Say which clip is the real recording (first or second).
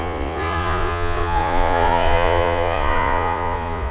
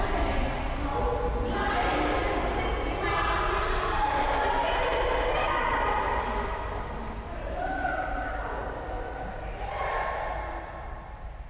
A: second